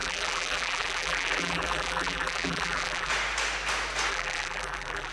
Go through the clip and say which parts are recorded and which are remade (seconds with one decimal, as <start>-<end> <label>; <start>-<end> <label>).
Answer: 0.0-3.1 remade; 3.1-4.1 recorded; 4.1-5.1 remade